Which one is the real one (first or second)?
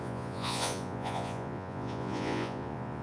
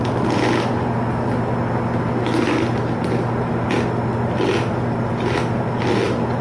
second